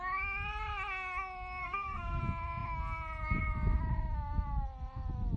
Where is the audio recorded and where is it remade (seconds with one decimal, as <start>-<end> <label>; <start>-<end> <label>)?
0.0-1.6 recorded; 1.6-2.2 remade; 2.2-5.4 recorded